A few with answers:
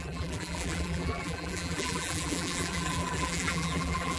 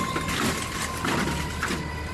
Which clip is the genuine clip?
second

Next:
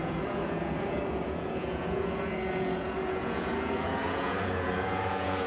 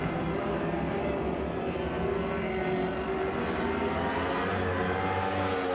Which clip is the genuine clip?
second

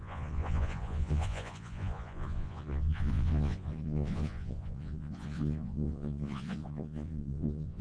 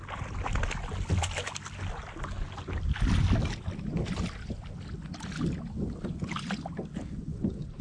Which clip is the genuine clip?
second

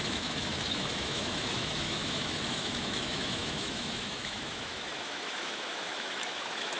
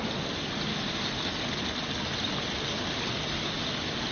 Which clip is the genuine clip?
second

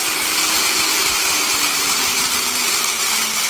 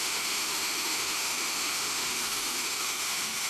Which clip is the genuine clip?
first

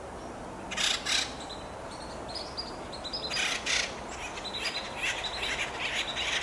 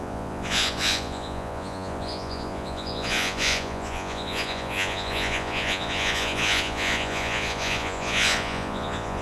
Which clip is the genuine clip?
first